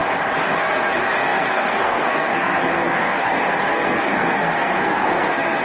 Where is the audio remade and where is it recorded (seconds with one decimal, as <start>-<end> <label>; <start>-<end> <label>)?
0.0-0.7 recorded; 0.7-5.6 remade